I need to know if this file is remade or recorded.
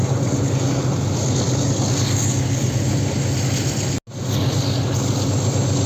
recorded